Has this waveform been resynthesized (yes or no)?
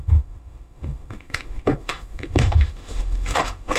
yes